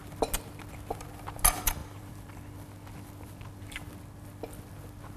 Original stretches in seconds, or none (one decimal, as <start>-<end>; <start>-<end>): 0.0-1.8; 2.3-5.2